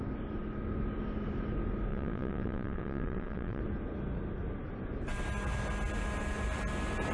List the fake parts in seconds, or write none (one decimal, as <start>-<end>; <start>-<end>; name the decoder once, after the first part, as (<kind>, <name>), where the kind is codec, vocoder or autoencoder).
1.9-3.6 (vocoder, WaveNeXt)